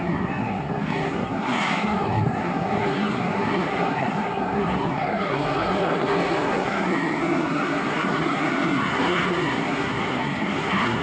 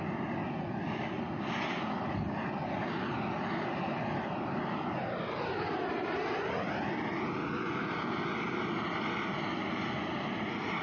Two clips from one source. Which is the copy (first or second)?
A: first